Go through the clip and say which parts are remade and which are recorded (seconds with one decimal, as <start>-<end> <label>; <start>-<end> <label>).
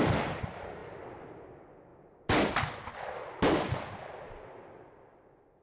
0.0-5.6 recorded